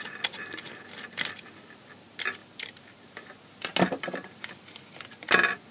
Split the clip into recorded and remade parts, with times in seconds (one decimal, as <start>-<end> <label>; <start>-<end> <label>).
0.0-2.4 recorded; 2.4-3.7 remade; 3.7-5.7 recorded